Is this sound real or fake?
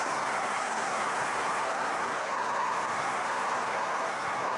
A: fake